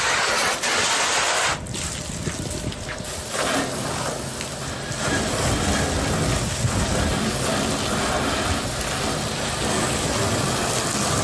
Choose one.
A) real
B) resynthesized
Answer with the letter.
A